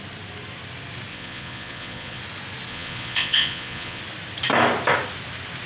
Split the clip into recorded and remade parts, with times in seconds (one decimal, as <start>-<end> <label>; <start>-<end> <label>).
0.0-1.1 recorded; 1.1-2.2 remade; 2.2-2.7 recorded; 2.7-4.0 remade; 4.0-5.7 recorded